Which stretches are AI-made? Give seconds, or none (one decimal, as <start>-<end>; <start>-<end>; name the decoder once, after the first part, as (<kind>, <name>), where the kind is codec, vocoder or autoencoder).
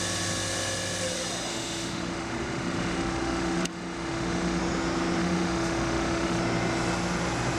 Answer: 1.5-4.6 (autoencoder, DAC-VAE); 5.2-6.4